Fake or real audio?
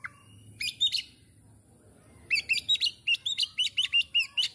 real